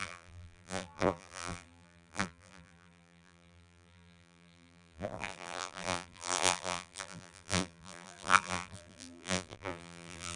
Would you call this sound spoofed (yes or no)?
yes